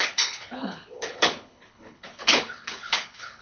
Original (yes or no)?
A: no